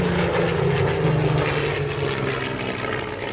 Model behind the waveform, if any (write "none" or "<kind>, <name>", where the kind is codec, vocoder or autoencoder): none